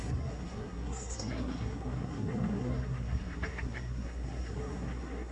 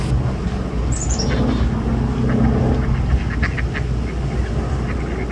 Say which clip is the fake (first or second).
first